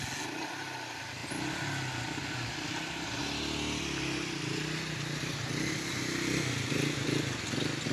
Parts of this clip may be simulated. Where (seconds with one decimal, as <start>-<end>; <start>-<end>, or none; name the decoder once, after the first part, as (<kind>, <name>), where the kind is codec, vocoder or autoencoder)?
none